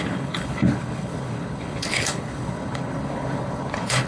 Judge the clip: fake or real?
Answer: fake